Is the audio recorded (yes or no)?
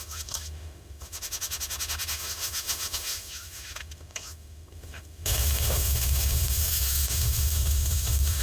no